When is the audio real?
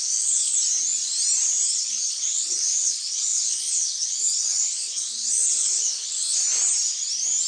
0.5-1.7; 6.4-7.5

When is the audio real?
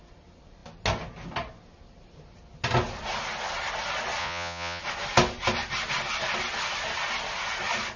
0.0-4.2; 4.8-8.0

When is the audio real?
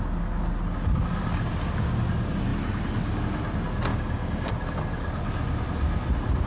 0.0-3.9; 4.5-6.5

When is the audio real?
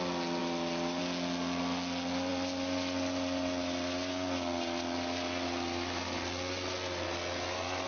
0.0-7.9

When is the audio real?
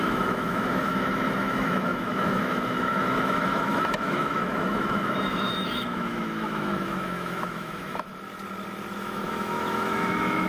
8.1-9.0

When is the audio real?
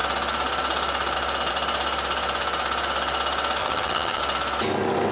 0.0-3.6; 4.2-5.1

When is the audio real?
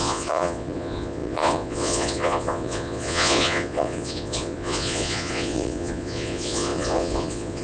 none